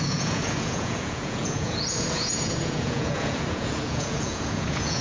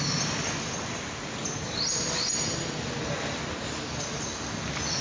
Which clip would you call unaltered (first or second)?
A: second